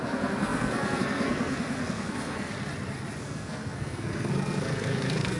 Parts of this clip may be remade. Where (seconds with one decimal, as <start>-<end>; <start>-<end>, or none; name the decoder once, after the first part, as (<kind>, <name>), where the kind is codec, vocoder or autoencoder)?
0.0-2.5 (codec, SNAC); 3.2-5.4